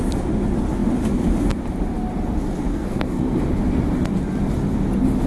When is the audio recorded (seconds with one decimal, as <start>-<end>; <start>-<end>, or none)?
0.0-2.7; 3.4-5.3

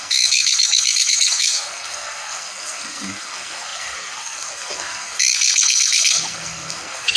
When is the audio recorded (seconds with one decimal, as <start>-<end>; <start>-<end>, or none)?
none

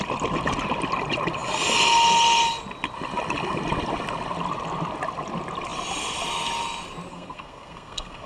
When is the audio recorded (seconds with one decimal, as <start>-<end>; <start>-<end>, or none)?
0.0-7.1

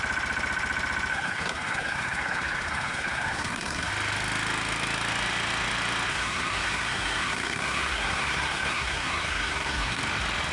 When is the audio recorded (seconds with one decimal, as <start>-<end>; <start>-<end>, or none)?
0.0-1.1; 3.9-6.1; 10.0-10.5

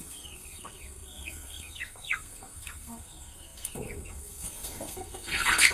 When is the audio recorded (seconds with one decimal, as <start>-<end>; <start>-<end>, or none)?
none

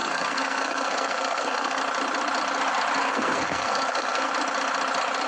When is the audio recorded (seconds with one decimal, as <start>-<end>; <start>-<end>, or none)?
1.8-3.0; 4.3-5.3